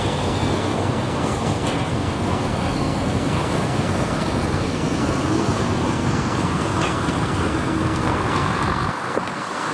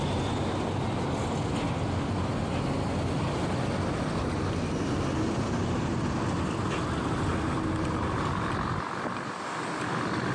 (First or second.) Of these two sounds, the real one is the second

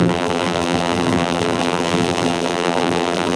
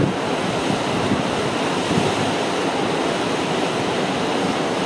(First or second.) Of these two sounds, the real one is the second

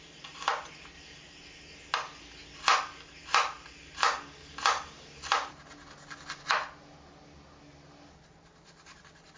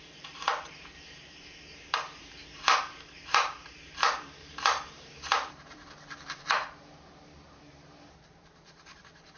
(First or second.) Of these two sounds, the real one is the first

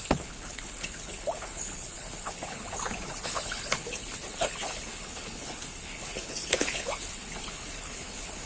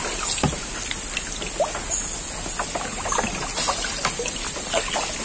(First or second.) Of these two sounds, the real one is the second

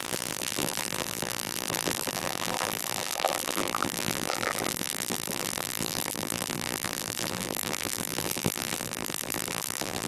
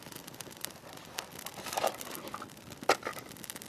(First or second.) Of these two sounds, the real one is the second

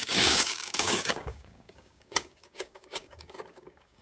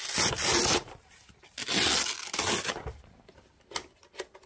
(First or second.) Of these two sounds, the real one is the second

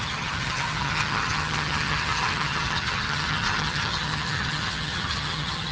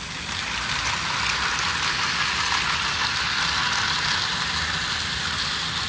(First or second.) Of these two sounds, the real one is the second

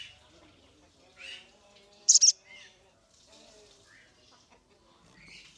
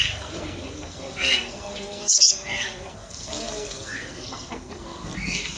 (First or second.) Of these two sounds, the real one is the first